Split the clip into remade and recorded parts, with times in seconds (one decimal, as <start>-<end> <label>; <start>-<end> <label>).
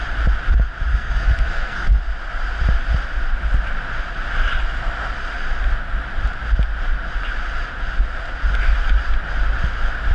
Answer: 0.0-0.9 recorded; 0.9-2.0 remade; 2.0-10.1 recorded